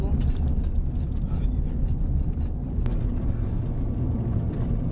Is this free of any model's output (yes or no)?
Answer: yes